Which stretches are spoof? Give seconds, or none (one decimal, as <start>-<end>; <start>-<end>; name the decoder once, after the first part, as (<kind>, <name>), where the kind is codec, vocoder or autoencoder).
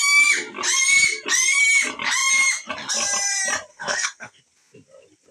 3.7-4.4 (codec, SNAC)